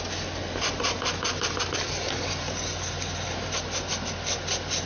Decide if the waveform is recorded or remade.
recorded